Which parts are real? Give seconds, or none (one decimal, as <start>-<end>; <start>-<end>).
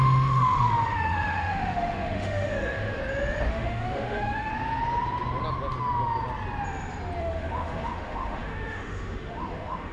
3.0-3.5; 4.5-7.2